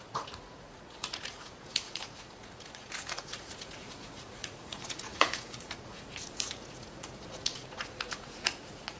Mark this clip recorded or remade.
remade